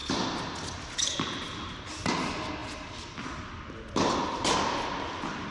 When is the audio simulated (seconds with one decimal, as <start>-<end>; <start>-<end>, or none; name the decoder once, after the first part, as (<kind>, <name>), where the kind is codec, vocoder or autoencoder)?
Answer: none